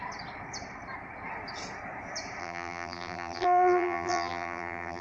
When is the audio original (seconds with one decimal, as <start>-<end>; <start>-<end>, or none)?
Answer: 0.0-2.4